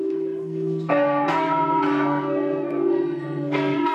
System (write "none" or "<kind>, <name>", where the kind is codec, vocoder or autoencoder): codec, SNAC